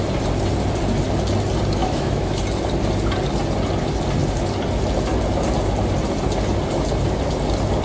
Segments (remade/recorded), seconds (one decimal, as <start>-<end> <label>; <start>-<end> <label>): 0.0-1.8 recorded; 1.8-2.4 remade; 2.4-7.8 recorded